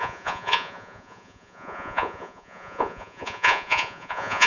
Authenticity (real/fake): fake